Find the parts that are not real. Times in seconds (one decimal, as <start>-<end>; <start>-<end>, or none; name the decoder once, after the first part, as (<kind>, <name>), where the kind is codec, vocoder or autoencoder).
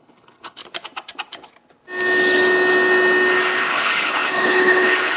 0.0-0.6 (codec, HILCodec); 3.7-5.2